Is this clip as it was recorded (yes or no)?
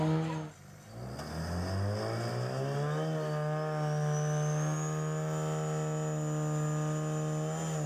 yes